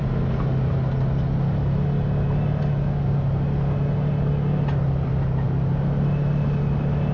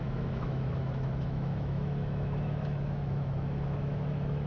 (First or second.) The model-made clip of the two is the second